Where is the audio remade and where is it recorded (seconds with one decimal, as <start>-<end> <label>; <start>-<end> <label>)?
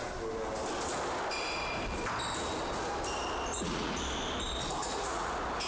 0.0-3.5 recorded; 3.5-4.0 remade; 4.0-4.8 recorded; 4.8-5.3 remade; 5.3-5.7 recorded